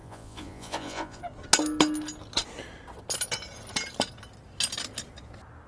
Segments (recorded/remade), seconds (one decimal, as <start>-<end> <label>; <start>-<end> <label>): 0.0-1.2 remade; 1.2-5.7 recorded